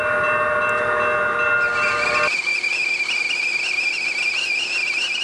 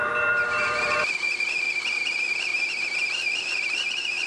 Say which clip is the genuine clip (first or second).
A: first